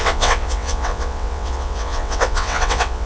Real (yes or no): no